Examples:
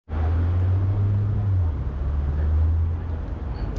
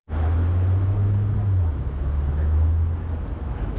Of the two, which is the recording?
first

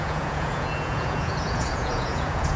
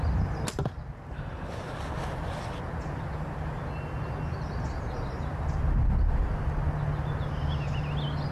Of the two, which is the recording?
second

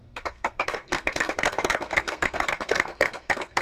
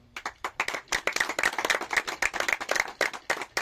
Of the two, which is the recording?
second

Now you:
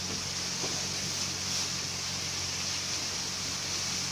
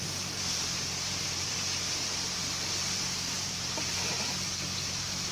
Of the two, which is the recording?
first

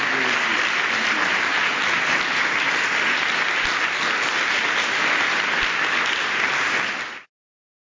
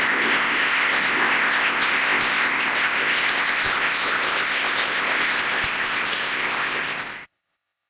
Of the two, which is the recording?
first